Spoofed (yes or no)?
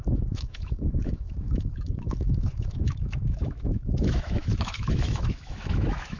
yes